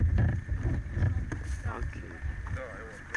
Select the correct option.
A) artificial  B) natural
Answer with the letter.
B